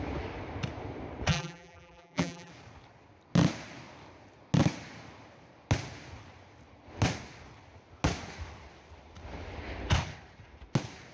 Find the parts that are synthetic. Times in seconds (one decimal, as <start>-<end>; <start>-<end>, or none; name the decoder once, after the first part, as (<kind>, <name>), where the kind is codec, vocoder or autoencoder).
1.3-2.5 (vocoder, BigVGAN v2)